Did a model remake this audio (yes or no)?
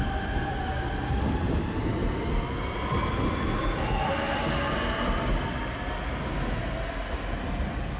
no